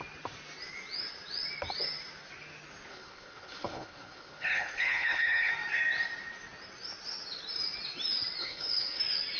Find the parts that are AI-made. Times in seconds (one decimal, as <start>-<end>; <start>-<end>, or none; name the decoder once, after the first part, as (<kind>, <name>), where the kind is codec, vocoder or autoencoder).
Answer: 2.9-5.5 (codec, HILCodec); 8.4-9.0